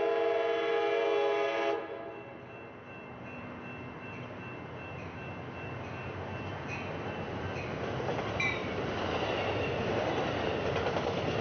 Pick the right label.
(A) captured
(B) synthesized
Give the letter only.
A